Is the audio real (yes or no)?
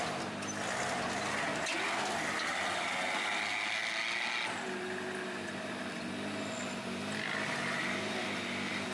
yes